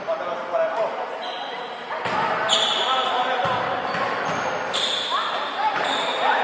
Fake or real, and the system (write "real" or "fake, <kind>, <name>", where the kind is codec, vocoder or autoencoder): real